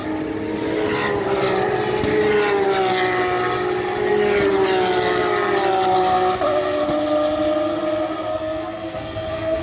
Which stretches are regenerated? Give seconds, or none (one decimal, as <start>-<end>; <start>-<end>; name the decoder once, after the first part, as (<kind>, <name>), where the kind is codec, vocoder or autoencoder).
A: 8.3-9.6 (codec, SNAC)